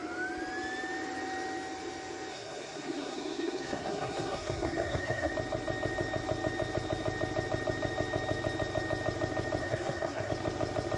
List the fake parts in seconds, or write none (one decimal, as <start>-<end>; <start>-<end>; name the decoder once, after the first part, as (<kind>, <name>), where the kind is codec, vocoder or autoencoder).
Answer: 2.3-5.3 (codec, SNAC); 9.6-10.3